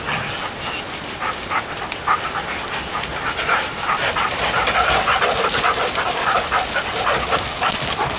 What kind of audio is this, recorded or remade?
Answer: recorded